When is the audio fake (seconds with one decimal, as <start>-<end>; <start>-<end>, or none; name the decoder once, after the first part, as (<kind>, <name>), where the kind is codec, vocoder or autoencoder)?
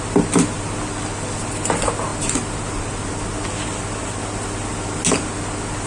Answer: none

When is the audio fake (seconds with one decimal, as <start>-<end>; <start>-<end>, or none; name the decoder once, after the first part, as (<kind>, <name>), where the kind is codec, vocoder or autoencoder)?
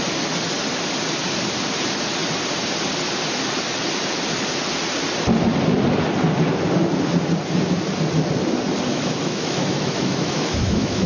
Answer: 8.9-11.1 (autoencoder, DAC-VAE)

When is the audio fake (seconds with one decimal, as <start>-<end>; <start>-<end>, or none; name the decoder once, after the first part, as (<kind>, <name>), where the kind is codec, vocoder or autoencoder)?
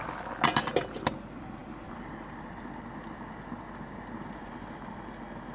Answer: none